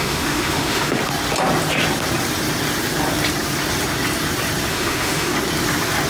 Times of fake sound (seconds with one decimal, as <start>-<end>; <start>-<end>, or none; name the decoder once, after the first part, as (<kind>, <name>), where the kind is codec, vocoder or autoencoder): 0.0-1.0 (autoencoder, DAC-VAE); 4.7-5.3